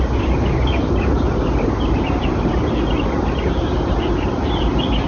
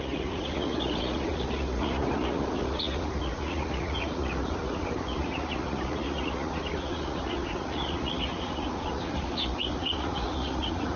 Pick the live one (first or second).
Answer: first